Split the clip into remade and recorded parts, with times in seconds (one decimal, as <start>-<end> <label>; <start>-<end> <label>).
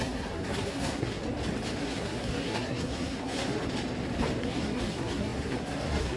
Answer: 0.0-1.2 remade; 1.2-1.8 recorded; 1.8-3.5 remade; 3.5-4.4 recorded; 4.4-6.2 remade